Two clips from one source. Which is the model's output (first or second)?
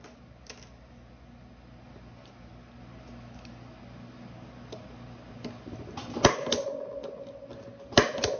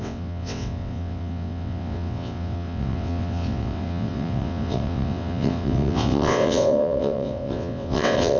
second